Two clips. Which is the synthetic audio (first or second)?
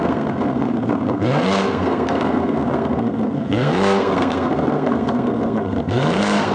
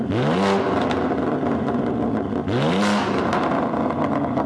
first